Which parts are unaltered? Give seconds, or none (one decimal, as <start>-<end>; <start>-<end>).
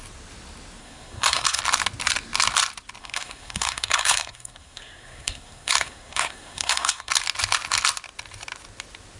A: 0.0-0.8; 1.6-3.0; 7.1-9.2